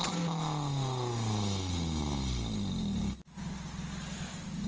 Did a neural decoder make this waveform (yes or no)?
no